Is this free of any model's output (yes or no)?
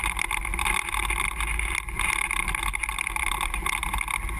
yes